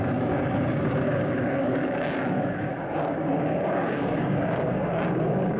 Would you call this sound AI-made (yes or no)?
yes